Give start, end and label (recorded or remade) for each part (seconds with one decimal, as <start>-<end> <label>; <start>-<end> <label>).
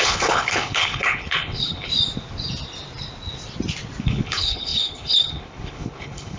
0.0-1.9 remade; 1.9-4.0 recorded; 4.0-6.4 remade